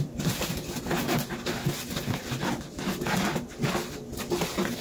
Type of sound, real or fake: real